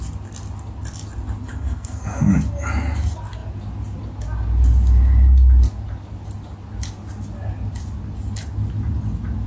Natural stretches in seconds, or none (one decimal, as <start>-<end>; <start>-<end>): 0.0-1.5; 2.3-9.5